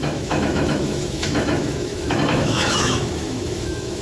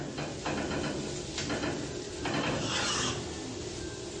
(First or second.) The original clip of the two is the second